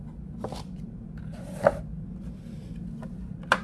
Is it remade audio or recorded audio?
recorded